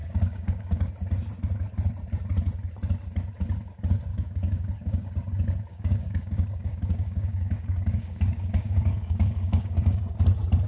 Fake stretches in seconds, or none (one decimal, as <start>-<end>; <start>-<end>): 0.0-0.9; 4.1-5.1; 5.7-10.0